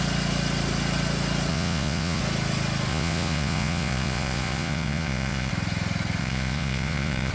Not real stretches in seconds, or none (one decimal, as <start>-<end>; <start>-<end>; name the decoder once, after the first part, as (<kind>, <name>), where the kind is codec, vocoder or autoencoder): 1.5-2.2 (vocoder, Vocos); 2.9-5.5; 6.2-7.3